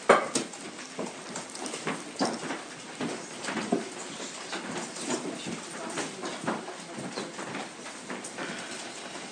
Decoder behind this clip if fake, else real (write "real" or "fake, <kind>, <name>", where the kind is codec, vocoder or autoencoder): real